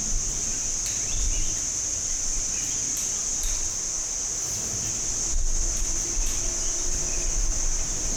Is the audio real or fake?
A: real